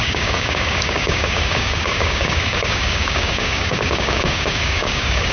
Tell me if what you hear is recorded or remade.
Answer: remade